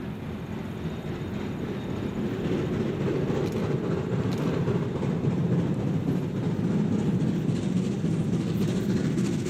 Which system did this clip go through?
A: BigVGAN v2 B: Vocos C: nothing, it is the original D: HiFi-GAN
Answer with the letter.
C